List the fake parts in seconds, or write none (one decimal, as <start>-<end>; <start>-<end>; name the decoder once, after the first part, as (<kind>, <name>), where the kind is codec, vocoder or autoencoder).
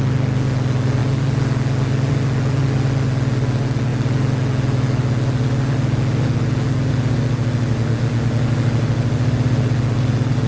none